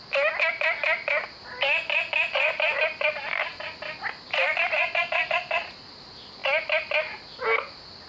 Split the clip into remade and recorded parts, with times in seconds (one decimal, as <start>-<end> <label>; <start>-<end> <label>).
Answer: 0.0-8.1 recorded